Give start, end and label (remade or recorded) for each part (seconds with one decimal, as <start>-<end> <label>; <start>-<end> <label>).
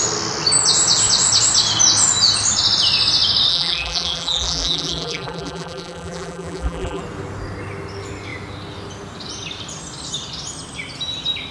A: 0.0-3.5 recorded; 3.5-7.0 remade; 7.0-11.5 recorded